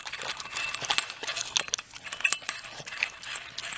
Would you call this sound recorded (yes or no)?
yes